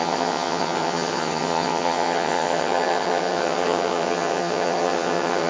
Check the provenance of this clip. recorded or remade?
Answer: remade